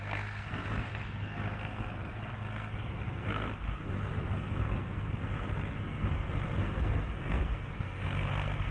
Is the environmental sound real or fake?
fake